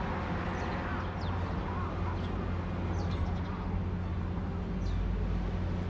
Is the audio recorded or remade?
recorded